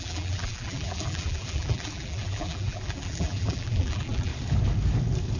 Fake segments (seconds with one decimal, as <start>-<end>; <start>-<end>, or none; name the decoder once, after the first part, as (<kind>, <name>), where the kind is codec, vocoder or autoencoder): 0.0-4.3 (vocoder, BigVGAN v2)